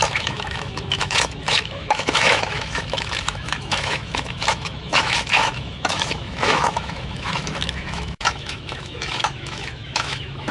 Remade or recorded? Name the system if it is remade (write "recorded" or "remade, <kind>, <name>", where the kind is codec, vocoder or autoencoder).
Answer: remade, autoencoder, DAC-VAE